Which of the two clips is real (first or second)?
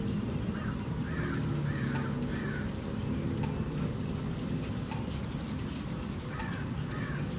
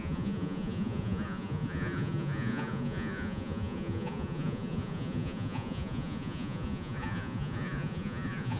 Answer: first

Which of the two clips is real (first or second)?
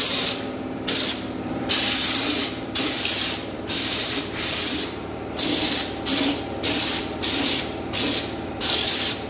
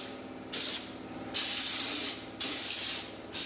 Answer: second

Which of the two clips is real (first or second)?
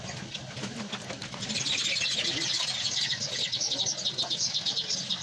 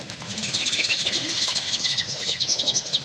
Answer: first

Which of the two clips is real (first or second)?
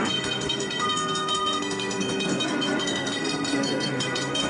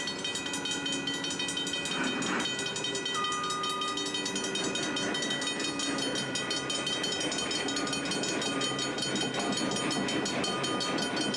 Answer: second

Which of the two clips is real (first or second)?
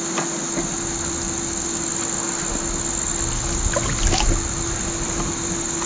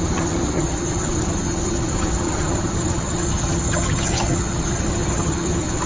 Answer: first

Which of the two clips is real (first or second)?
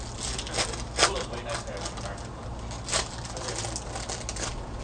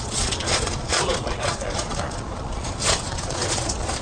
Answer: first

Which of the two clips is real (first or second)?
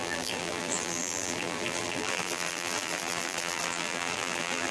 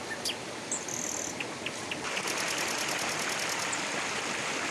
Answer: second